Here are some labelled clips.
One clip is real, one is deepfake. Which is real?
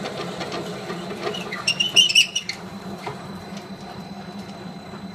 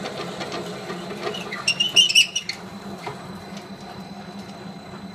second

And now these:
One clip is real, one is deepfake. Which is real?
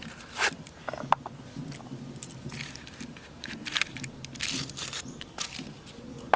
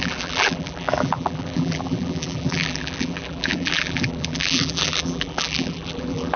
first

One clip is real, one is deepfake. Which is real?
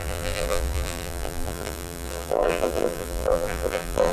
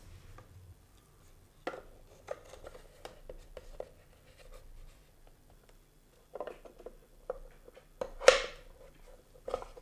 second